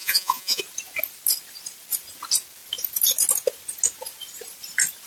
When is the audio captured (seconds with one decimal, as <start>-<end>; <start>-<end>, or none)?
0.6-5.1